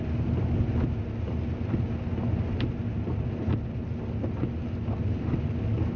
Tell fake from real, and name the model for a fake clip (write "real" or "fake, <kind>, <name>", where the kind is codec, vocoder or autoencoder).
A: real